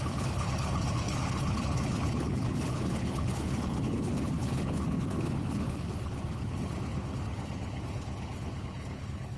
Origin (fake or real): fake